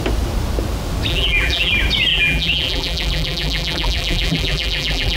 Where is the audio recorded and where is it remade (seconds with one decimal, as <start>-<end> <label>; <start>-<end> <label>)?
0.0-1.1 recorded; 1.1-1.7 remade; 1.7-2.1 recorded; 2.1-5.2 remade